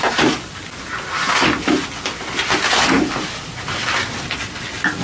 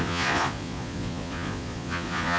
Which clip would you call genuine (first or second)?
first